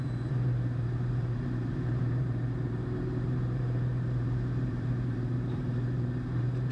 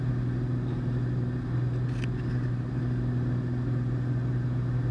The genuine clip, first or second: second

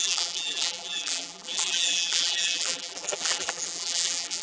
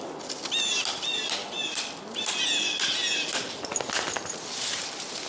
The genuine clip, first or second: second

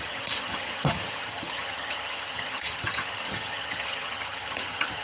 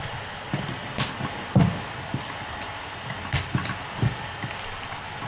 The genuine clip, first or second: second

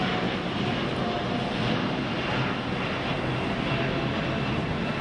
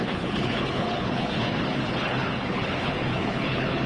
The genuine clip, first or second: first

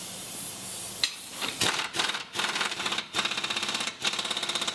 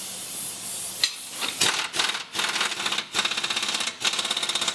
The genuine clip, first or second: second